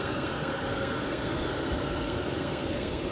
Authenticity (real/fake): fake